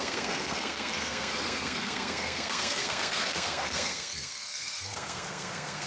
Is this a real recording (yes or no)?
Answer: no